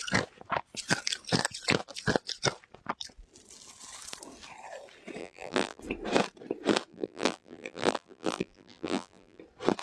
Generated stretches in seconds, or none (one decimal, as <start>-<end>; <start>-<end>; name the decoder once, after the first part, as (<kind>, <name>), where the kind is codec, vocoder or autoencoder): 5.2-5.8 (vocoder, BigVGAN v2); 6.9-9.4